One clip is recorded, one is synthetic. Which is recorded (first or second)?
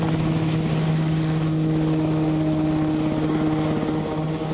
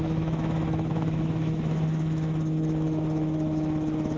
first